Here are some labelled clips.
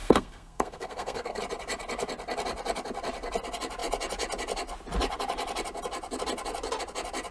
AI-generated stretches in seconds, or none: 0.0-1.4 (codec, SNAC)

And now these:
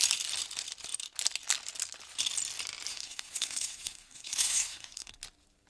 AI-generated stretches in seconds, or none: 2.9-5.2 (codec, SNAC)

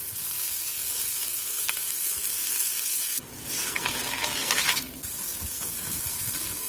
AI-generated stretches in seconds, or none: 0.0-6.7 (codec, SNAC)

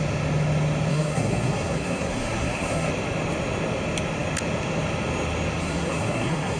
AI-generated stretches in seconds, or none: 0.9-2.9 (codec, SNAC); 5.6-6.6

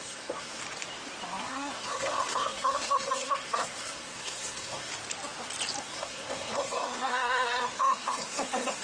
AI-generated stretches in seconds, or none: 0.0-0.6 (codec, SNAC); 1.4-4.9; 5.8-8.8

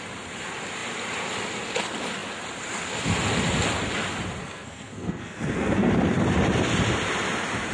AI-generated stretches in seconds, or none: 4.4-5.9 (codec, SNAC)